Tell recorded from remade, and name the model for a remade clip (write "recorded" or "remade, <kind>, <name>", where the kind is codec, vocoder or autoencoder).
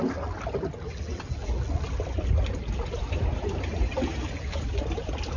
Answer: recorded